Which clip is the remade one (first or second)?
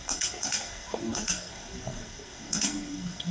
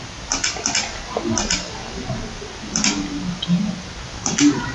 first